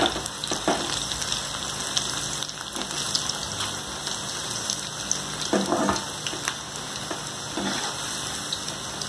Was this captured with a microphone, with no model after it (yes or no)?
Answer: yes